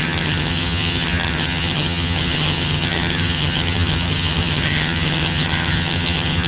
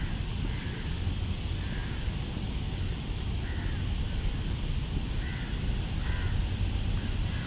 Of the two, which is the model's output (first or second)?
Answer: first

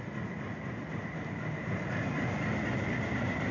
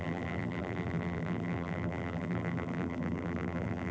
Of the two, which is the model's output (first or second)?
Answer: second